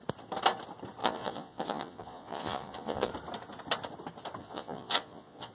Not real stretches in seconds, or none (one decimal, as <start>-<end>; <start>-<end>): 1.0-3.1; 4.4-5.5